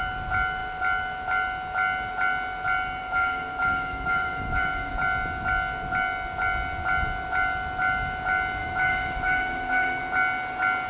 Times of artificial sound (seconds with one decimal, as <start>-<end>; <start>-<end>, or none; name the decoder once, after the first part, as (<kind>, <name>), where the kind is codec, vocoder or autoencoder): 3.0-4.9 (autoencoder, DAC-VAE); 8.6-10.0